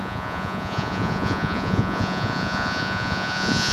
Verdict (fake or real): fake